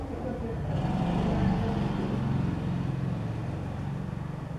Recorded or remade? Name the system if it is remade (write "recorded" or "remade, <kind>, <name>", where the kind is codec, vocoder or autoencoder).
recorded